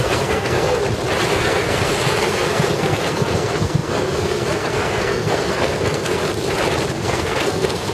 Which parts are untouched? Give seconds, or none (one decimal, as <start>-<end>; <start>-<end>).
0.8-1.3; 6.2-6.9